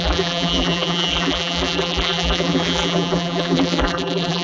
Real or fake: fake